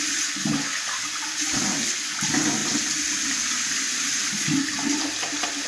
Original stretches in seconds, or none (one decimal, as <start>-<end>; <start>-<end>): 0.0-5.7